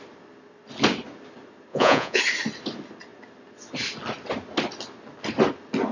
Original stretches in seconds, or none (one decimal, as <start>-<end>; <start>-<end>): 0.0-1.7; 2.2-5.9